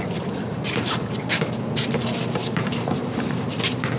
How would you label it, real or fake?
fake